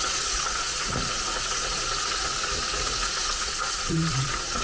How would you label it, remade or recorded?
remade